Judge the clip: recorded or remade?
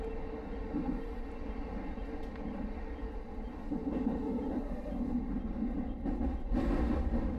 recorded